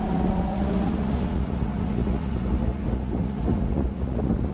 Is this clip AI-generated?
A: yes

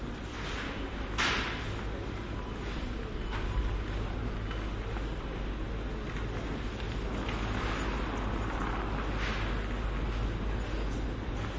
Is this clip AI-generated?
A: no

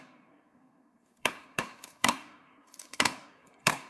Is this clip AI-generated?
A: yes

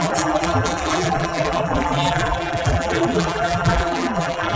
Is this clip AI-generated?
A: yes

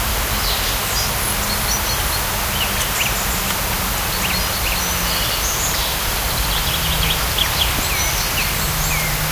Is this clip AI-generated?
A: no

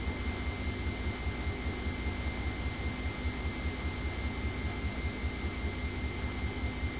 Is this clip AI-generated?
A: no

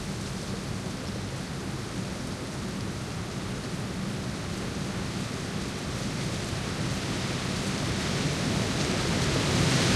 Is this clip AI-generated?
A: no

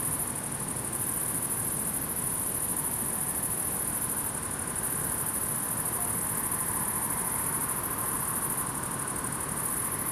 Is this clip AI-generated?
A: no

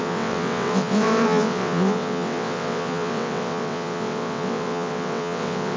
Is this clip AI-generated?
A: yes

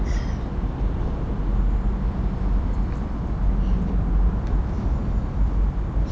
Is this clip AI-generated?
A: yes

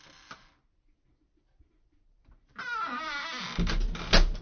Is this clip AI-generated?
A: no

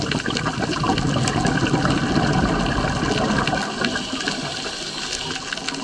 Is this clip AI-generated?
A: no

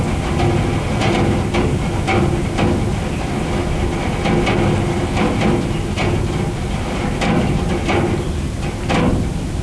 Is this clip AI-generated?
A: no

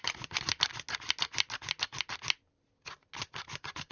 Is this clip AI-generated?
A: no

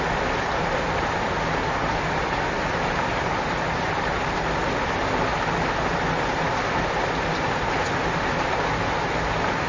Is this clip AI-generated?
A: no